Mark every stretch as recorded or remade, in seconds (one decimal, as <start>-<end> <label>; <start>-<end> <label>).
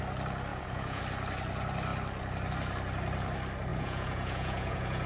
0.0-0.5 recorded; 0.5-1.0 remade; 1.0-3.7 recorded; 3.7-5.1 remade